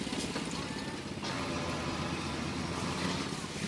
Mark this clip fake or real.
real